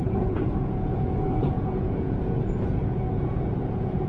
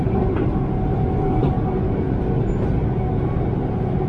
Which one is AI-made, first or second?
first